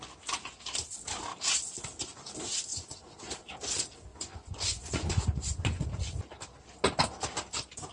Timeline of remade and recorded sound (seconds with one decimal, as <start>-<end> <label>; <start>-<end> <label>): 0.0-2.7 recorded; 2.7-3.3 remade; 3.3-4.1 recorded; 4.1-5.9 remade; 5.9-7.9 recorded